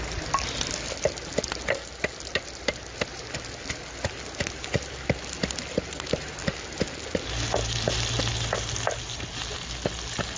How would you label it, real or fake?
real